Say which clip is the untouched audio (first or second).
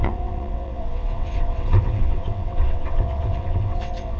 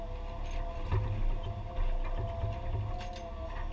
second